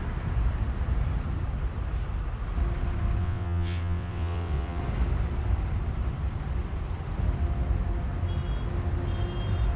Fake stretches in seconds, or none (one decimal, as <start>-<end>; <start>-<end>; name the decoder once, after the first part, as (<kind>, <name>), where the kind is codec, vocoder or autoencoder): 3.2-4.8 (vocoder, WaveNeXt)